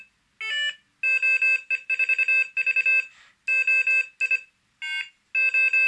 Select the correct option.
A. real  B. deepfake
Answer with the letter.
A